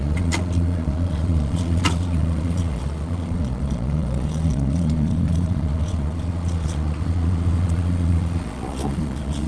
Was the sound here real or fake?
fake